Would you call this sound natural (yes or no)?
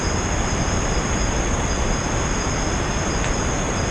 yes